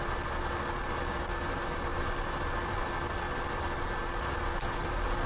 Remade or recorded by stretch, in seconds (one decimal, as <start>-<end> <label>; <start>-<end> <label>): 0.0-5.3 recorded